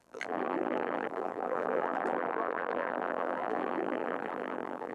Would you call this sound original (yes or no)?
no